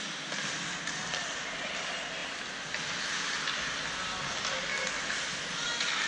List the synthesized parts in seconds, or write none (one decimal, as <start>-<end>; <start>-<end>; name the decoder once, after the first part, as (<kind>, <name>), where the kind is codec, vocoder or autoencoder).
none